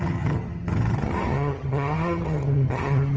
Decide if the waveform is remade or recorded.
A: remade